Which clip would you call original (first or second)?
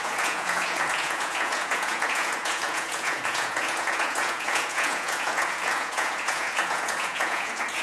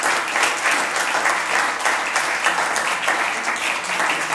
second